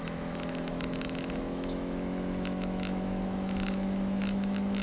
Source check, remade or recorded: remade